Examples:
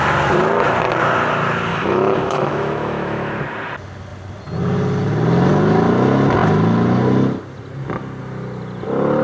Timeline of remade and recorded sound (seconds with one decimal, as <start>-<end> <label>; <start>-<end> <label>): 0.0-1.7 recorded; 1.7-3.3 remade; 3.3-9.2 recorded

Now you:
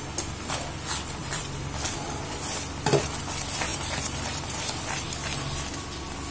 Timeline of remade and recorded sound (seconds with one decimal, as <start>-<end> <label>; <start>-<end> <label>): 0.0-1.2 recorded; 1.2-3.2 remade; 3.2-3.7 recorded; 3.7-4.6 remade; 4.6-6.3 recorded

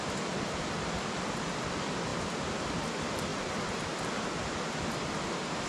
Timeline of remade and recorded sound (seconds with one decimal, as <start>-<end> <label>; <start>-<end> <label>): 0.0-5.7 recorded

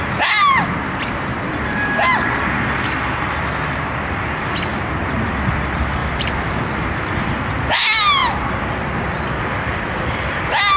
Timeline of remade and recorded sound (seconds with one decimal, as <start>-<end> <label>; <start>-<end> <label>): 0.0-6.0 recorded; 6.0-7.4 remade; 7.4-10.8 recorded

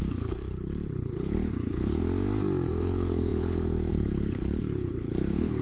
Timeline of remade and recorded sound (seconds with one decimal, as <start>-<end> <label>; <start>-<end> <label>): 0.0-2.0 remade; 2.0-2.8 recorded; 2.8-5.6 remade

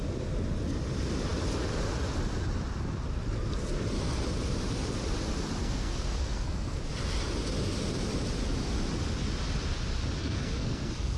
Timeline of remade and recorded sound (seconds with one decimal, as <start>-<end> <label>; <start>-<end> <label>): 0.0-5.6 recorded; 5.6-6.8 remade; 6.8-10.2 recorded; 10.2-11.2 remade